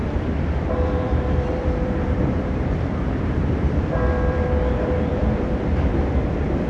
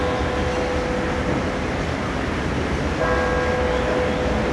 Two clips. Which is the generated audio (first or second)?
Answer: first